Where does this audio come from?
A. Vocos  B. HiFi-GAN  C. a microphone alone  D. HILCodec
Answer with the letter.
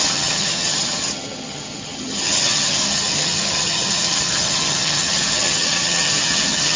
B